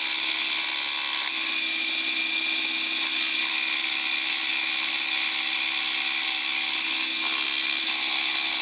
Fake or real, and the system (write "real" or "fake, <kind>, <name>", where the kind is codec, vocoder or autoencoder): real